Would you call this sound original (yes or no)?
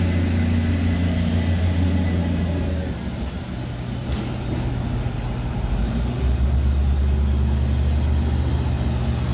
yes